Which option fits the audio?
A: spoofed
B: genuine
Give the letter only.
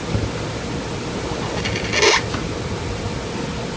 B